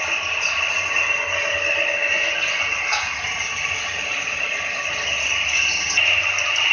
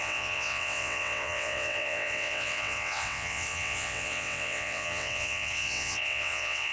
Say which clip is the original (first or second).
first